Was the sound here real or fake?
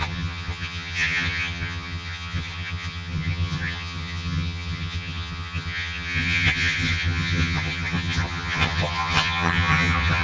fake